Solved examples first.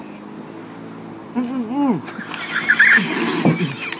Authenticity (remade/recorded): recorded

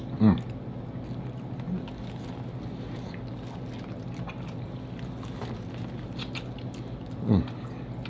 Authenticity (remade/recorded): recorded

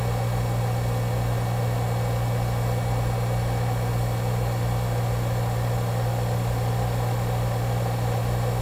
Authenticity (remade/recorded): recorded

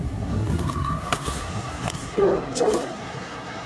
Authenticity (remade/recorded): remade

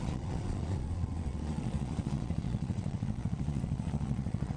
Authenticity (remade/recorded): remade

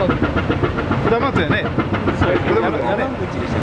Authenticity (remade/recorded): recorded